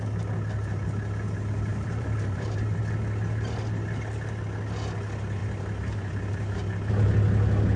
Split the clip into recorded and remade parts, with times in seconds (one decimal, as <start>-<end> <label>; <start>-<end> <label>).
0.0-1.7 recorded; 1.7-2.8 remade; 2.8-5.4 recorded; 5.4-6.9 remade; 6.9-7.8 recorded